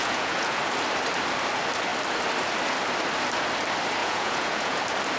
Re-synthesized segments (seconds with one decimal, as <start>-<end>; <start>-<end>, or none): 0.0-0.6; 4.0-4.8